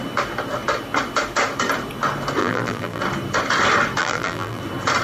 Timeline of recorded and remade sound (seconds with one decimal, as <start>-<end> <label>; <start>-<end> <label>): 0.0-2.4 recorded; 2.4-3.0 remade; 3.0-4.0 recorded; 4.0-4.6 remade; 4.6-5.0 recorded

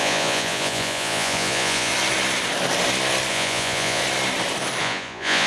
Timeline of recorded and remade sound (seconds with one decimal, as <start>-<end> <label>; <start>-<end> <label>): 0.0-1.9 remade; 1.9-3.3 recorded; 3.3-4.0 remade; 4.0-4.8 recorded; 4.8-5.5 remade

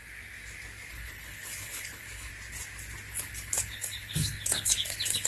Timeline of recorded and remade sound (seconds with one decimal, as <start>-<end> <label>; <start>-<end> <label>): 0.0-0.9 recorded; 0.9-2.3 remade; 2.3-3.1 recorded; 3.1-5.3 remade

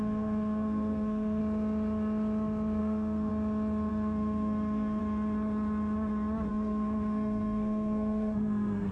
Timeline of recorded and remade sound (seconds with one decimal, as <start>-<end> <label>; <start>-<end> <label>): 0.0-1.4 remade; 1.4-2.8 recorded; 2.8-3.3 remade; 3.3-3.9 recorded; 3.9-5.0 remade; 5.0-6.5 recorded; 6.5-8.9 remade

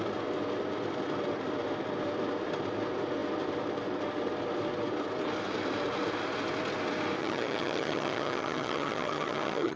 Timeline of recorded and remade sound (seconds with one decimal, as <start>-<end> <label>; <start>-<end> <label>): 0.0-7.2 recorded; 7.2-9.8 remade